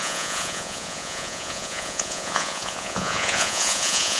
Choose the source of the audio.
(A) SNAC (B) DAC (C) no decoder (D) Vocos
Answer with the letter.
D